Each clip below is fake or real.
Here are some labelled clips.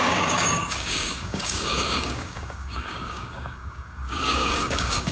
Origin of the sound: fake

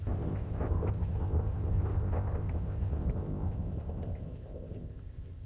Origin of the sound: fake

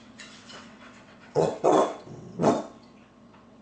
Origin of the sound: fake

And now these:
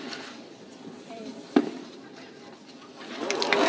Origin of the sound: fake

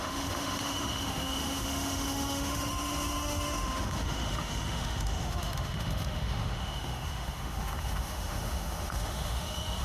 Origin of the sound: fake